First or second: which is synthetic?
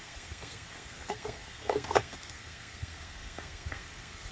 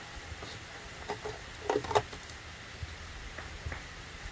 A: first